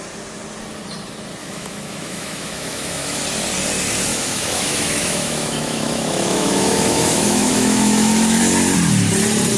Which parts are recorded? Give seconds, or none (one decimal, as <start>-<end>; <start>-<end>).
0.0-1.4; 3.2-4.1; 8.4-9.6